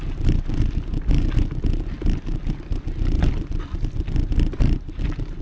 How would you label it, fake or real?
real